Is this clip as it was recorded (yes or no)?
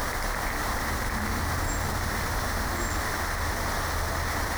yes